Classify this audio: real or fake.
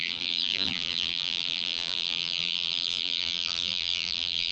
fake